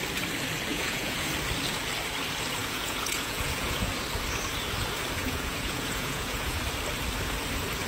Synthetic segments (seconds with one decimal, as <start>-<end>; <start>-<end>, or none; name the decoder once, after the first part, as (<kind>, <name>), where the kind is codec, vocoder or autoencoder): 0.7-1.3 (vocoder, Vocos); 2.6-3.9; 5.2-6.6